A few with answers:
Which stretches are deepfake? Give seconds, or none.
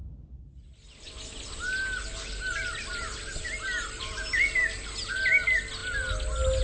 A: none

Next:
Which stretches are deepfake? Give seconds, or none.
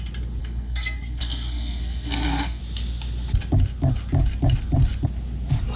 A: 0.4-2.6 (codec, SNAC)